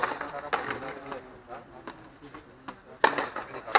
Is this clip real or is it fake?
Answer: real